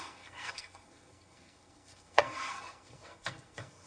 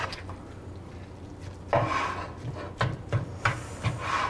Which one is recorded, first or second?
second